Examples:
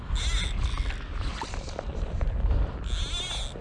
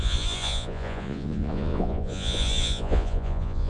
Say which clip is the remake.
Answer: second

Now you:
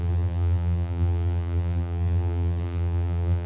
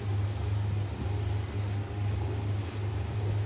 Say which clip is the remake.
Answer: first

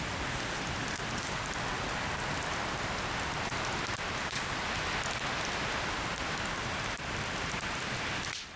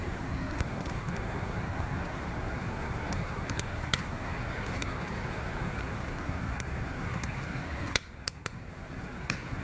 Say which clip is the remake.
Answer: second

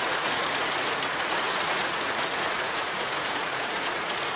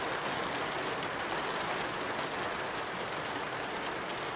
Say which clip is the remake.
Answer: first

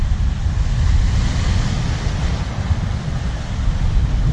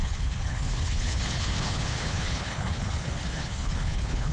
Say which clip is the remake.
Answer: second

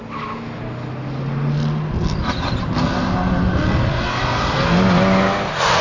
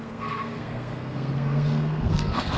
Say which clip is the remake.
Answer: second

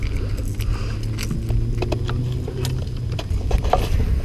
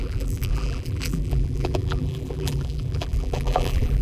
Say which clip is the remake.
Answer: second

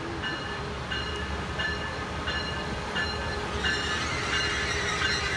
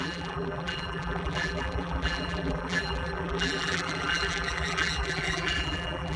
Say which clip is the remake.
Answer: second